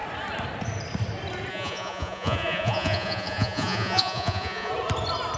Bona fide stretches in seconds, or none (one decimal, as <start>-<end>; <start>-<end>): 0.0-1.5; 4.7-5.4